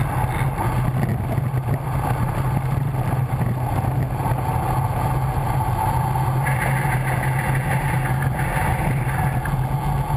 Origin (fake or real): real